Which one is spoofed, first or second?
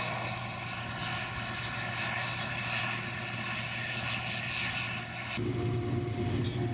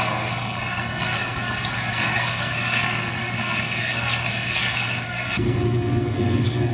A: second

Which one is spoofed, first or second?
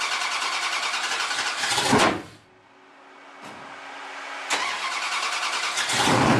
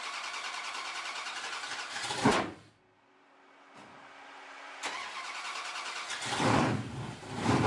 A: second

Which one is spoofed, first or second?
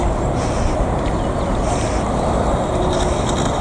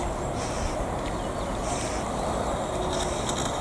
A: first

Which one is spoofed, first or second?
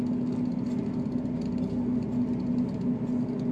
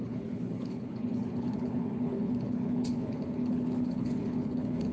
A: second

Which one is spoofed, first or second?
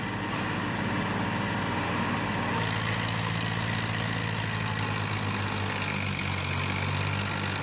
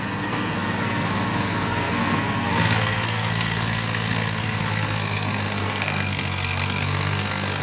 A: second